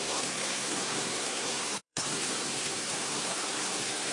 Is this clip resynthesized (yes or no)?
yes